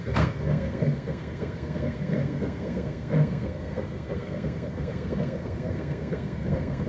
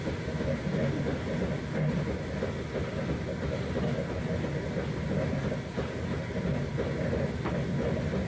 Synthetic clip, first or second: first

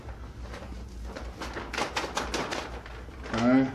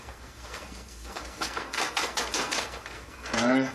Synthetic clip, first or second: second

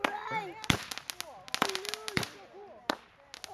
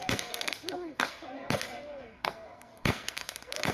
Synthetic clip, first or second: second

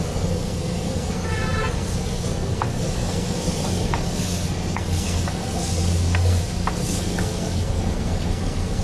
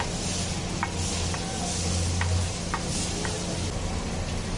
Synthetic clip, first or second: first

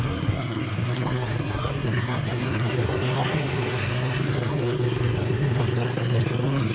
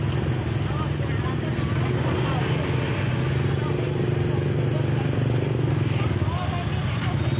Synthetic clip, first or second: first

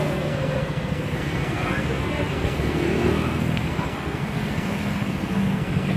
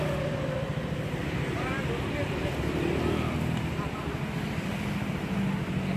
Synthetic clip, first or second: first